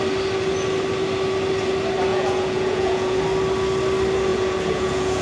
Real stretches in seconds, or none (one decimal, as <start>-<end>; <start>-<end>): 0.0-2.1; 3.2-4.3

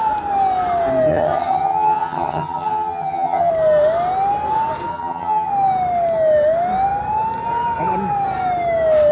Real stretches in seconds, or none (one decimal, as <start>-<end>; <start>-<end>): 0.0-1.1; 3.5-4.9; 5.5-9.1

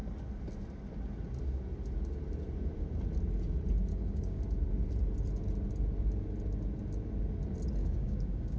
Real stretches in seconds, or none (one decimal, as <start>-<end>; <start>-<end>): 0.0-3.9; 4.4-7.8

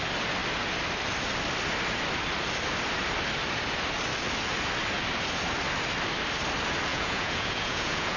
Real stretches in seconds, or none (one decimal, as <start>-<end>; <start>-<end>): 0.0-6.9

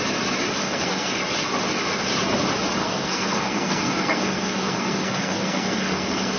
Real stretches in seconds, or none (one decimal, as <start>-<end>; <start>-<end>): 0.0-0.6; 1.2-2.8